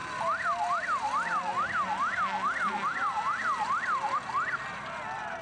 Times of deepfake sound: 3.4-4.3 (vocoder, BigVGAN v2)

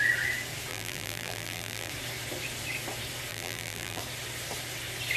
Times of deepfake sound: 0.7-1.9 (vocoder, BigVGAN v2); 3.3-4.0

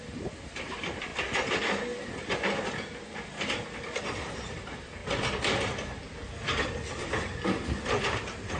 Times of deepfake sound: 0.0-1.1 (vocoder, BigVGAN v2); 4.0-5.0; 8.0-8.6